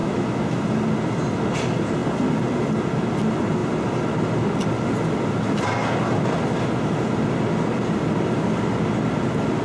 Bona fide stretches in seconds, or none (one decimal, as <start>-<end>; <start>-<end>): 0.6-9.6